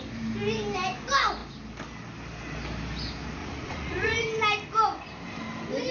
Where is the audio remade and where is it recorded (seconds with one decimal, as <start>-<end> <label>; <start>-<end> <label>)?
0.0-3.4 recorded; 3.4-4.2 remade; 4.2-5.9 recorded